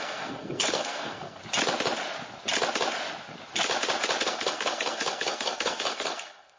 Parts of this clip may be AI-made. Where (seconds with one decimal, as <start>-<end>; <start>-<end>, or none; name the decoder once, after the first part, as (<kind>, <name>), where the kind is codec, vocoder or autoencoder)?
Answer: 0.0-1.4 (codec, SNAC); 4.2-6.6